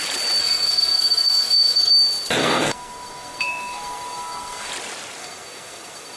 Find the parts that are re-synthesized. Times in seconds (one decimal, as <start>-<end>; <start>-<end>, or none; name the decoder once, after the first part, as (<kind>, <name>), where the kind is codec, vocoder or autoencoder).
0.4-1.9 (codec, SNAC); 2.4-4.7; 5.2-6.2